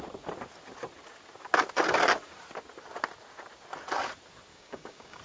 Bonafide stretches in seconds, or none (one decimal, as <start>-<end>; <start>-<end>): 0.0-4.5